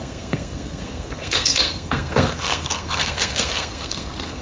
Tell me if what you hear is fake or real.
fake